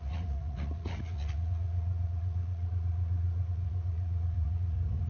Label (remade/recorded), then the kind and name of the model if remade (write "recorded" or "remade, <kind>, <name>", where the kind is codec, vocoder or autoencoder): remade, vocoder, Vocos